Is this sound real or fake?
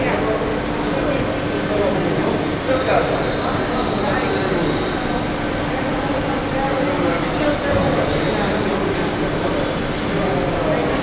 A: real